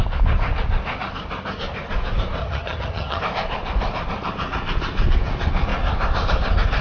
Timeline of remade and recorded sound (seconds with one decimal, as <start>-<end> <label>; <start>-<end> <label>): 0.0-2.4 recorded; 2.4-3.2 remade; 3.2-6.8 recorded